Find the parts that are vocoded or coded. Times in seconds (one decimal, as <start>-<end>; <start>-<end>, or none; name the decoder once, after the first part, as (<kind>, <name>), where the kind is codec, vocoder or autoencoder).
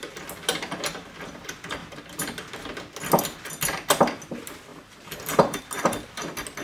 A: 4.7-5.6 (vocoder, BigVGAN v2)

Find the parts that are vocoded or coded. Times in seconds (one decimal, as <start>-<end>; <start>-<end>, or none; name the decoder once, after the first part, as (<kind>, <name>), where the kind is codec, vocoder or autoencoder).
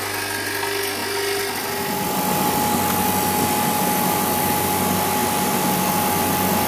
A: none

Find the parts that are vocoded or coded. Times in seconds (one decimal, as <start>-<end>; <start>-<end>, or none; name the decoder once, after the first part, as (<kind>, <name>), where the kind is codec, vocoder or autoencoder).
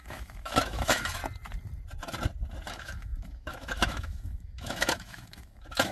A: 0.0-1.2 (autoencoder, DAC-VAE); 2.7-5.9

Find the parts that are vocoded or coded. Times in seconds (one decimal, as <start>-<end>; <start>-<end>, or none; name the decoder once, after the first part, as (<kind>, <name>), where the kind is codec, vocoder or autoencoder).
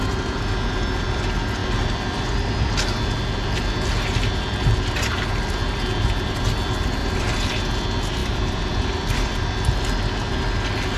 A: 1.6-2.5 (vocoder, BigVGAN v2); 7.0-7.5; 8.2-9.4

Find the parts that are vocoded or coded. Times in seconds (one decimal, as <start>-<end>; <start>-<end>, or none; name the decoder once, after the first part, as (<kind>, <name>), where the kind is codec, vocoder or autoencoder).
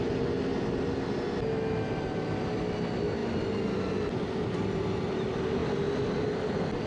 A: none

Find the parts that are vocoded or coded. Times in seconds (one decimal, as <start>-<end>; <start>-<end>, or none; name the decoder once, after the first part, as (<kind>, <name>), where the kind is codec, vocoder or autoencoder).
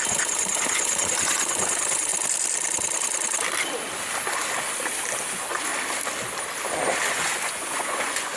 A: 0.0-2.1 (vocoder, Vocos); 5.3-5.7; 7.1-8.4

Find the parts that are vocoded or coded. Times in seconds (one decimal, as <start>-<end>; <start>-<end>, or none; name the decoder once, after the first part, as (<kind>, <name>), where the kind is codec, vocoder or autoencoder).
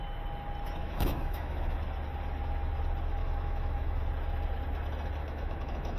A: 0.8-1.8 (autoencoder, DAC-VAE); 3.2-4.0; 5.2-6.0